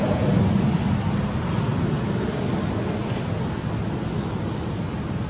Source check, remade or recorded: recorded